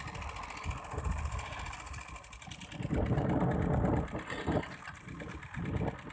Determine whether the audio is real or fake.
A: real